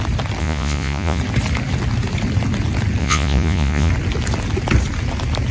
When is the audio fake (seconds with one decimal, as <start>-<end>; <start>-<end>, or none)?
0.4-1.2; 3.0-3.9